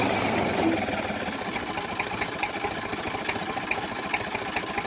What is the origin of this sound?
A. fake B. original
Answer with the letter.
B